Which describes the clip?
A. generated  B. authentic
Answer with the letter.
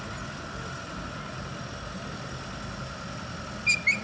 B